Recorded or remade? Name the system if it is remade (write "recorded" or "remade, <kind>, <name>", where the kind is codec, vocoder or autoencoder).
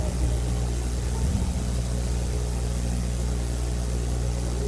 recorded